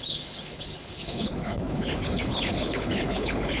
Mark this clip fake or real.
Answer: fake